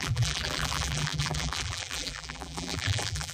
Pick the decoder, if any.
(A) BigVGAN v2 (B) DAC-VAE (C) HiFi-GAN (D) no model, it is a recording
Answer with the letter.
A